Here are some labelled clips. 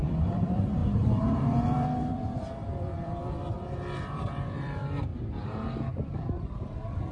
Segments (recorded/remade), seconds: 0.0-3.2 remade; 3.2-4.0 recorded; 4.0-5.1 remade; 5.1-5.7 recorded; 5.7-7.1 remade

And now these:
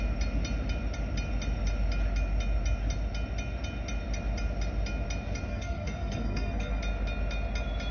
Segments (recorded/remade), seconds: 0.0-5.5 recorded; 5.5-6.8 remade; 6.8-7.9 recorded

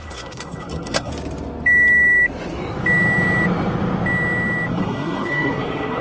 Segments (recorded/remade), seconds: 0.0-1.1 remade; 1.1-4.7 recorded; 4.7-6.0 remade

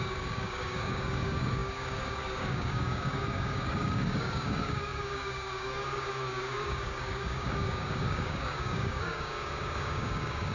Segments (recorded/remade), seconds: 0.0-10.5 remade

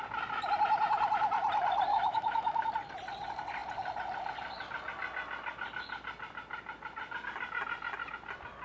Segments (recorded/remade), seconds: 0.0-1.9 recorded; 1.9-2.7 remade; 2.7-8.6 recorded

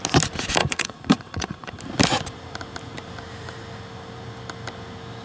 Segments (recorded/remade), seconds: 0.0-0.6 recorded; 0.6-1.8 remade; 1.8-5.2 recorded